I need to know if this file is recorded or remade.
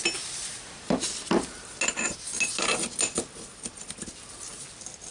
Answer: recorded